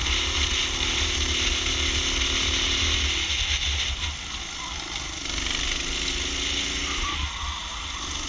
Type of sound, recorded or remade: recorded